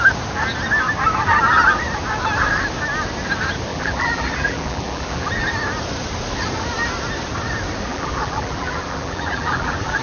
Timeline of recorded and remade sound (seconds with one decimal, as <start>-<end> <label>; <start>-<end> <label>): 0.0-3.7 recorded; 3.7-5.3 remade; 5.3-7.9 recorded; 7.9-10.0 remade

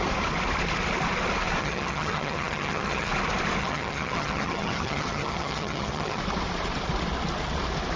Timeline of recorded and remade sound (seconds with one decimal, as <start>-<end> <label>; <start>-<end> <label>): 0.0-1.6 recorded; 1.6-3.1 remade; 3.1-3.6 recorded; 3.6-6.2 remade; 6.2-8.0 recorded

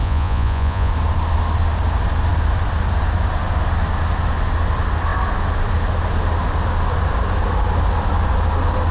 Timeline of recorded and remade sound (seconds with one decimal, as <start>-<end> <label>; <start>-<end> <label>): 0.0-0.9 remade; 0.9-8.9 recorded

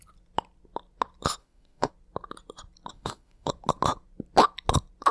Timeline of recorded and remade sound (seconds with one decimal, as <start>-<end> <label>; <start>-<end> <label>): 0.0-1.4 recorded; 1.4-1.9 remade; 1.9-2.9 recorded; 2.9-3.5 remade; 3.5-5.1 recorded

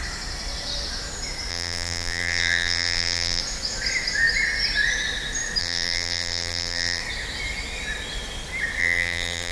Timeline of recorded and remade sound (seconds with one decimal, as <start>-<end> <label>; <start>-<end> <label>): 0.0-1.5 recorded; 1.5-3.4 remade; 3.4-5.6 recorded; 5.6-7.0 remade; 7.0-8.8 recorded; 8.8-9.5 remade

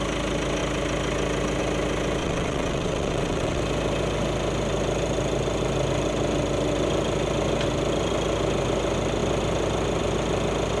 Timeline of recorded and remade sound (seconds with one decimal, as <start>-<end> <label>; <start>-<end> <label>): 0.0-2.2 recorded; 2.2-3.6 remade; 3.6-10.8 recorded

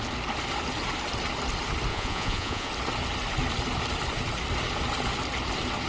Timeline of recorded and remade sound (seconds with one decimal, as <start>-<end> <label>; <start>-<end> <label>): 0.0-1.9 recorded; 1.9-2.7 remade; 2.7-5.9 recorded